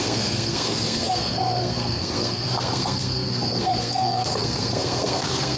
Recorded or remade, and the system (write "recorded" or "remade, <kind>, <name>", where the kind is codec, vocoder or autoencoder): remade, codec, SNAC